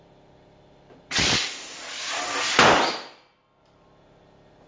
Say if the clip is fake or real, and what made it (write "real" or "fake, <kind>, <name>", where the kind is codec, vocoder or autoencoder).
fake, vocoder, BigVGAN v2